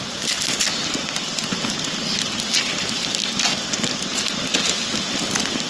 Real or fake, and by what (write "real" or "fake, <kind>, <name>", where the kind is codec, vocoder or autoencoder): real